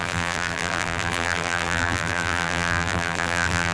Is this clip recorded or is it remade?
remade